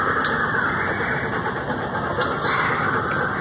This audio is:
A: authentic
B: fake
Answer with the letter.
A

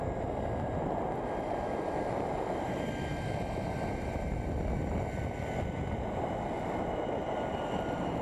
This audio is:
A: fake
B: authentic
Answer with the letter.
B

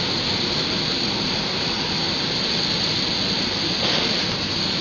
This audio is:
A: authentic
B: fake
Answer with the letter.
A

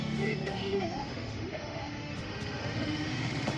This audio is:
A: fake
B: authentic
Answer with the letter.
A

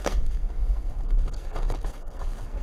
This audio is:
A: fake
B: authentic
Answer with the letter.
A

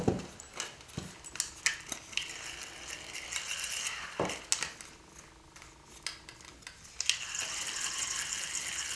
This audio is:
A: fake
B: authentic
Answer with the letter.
B